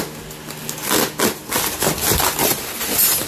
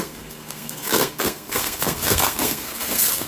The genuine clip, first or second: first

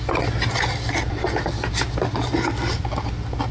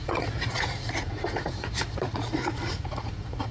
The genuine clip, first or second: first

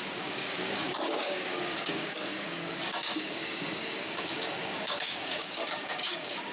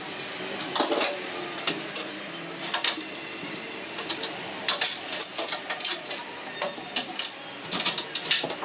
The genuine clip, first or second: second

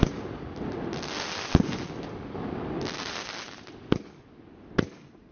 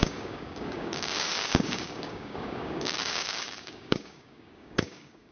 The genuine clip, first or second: first